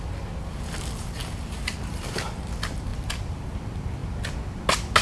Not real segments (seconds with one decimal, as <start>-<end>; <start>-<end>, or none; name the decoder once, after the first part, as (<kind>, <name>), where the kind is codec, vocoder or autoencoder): 1.2-1.8 (vocoder, BigVGAN v2); 2.9-3.5